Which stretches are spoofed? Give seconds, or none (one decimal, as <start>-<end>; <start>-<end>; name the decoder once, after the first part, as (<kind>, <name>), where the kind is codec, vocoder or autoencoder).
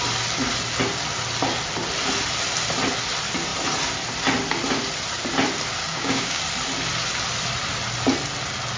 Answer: 5.8-6.4 (codec, DAC)